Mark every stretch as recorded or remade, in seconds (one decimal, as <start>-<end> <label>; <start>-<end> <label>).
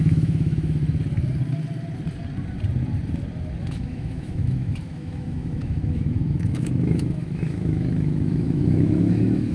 0.0-0.8 remade; 0.8-3.6 recorded; 3.6-9.5 remade